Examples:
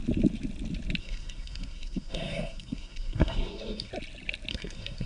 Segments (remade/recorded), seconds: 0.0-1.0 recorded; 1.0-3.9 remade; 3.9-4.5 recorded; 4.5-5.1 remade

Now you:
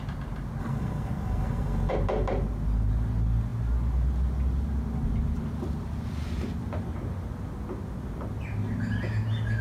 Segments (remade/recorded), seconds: 0.0-0.6 recorded; 0.6-1.9 remade; 1.9-9.6 recorded

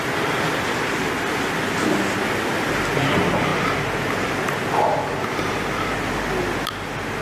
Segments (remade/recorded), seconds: 0.0-7.2 recorded

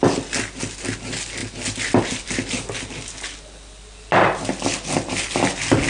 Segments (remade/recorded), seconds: 0.0-5.9 recorded

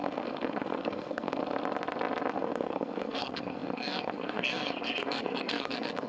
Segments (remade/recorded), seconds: 0.0-1.4 remade; 1.4-2.3 recorded; 2.3-6.1 remade

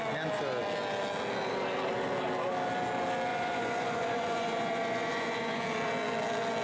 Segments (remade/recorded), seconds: 0.0-3.3 recorded; 3.3-5.6 remade; 5.6-6.6 recorded